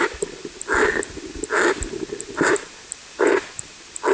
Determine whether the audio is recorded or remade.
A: recorded